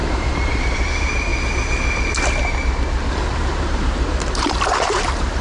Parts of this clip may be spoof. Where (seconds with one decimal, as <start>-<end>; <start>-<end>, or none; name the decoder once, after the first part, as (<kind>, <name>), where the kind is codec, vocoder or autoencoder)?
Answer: 0.0-1.3 (vocoder, BigVGAN v2); 3.1-5.4

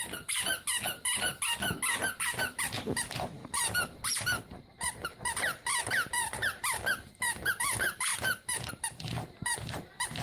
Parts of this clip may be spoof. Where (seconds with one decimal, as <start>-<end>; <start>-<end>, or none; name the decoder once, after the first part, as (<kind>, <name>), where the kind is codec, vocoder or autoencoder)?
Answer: 0.0-0.5 (vocoder, BigVGAN v2); 2.1-10.2

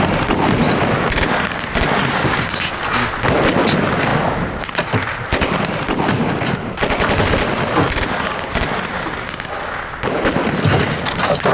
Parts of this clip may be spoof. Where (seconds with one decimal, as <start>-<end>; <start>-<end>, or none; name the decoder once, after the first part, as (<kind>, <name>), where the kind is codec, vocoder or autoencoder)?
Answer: none

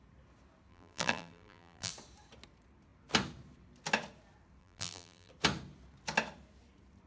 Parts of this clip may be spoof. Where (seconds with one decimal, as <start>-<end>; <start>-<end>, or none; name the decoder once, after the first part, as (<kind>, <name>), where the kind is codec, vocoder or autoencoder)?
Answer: 0.7-1.9 (vocoder, BigVGAN v2); 4.6-5.3